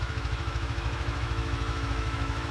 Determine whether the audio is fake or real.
fake